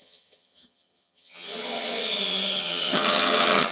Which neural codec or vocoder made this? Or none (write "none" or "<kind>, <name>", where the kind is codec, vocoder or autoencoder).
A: vocoder, HiFi-GAN